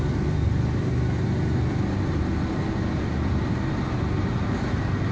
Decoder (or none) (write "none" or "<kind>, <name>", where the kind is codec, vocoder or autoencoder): none